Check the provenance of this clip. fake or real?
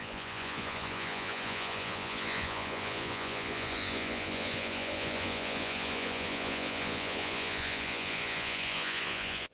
fake